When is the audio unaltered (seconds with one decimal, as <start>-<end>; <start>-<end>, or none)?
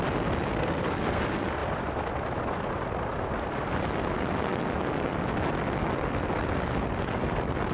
0.0-0.5; 1.2-7.7